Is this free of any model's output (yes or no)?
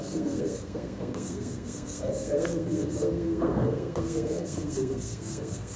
no